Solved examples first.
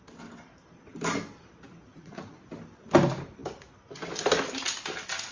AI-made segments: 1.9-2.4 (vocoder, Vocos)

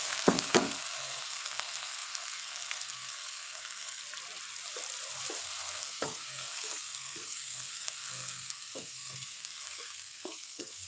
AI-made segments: 0.0-4.0 (codec, SNAC); 5.4-10.9

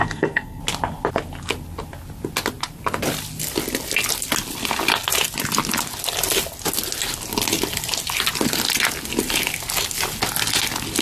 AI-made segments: 0.0-0.6 (codec, SNAC)

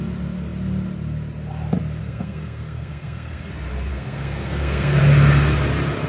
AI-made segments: 2.0-3.5 (codec, SNAC); 3.9-5.0